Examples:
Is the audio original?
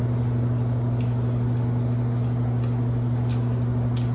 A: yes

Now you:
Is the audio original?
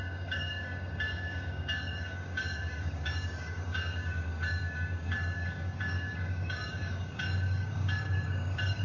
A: no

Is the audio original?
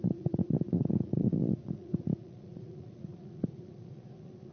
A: no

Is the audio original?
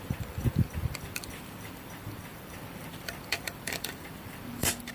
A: no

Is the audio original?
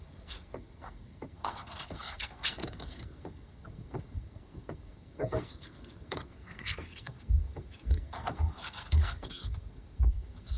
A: no